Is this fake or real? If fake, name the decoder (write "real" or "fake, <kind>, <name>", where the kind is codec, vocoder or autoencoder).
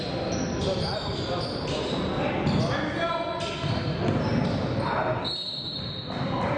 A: real